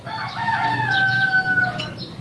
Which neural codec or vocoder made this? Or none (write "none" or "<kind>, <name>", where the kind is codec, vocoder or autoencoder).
none